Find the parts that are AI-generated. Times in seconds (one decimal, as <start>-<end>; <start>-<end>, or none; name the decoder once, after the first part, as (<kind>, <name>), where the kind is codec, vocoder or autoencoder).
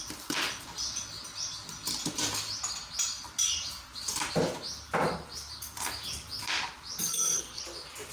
7.0-7.6 (codec, SNAC)